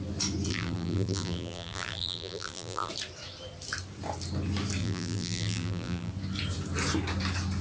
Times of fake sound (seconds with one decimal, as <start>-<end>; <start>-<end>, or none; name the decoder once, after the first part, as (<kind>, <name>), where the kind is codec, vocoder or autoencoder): 0.5-2.9 (vocoder, BigVGAN v2); 4.8-6.1